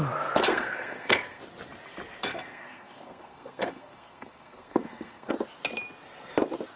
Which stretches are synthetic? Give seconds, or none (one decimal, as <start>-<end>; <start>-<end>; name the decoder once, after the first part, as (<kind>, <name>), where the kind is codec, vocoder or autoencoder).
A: 0.5-1.4 (codec, SNAC); 2.3-5.3